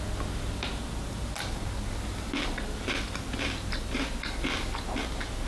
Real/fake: real